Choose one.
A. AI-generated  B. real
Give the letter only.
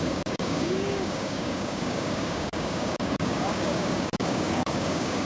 A